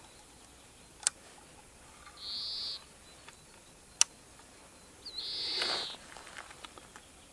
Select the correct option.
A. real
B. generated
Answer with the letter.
A